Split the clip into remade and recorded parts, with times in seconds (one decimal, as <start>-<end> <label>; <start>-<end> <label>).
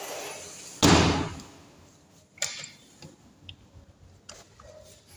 0.0-5.2 recorded